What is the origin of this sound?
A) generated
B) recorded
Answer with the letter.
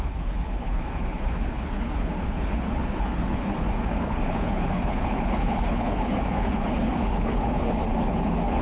A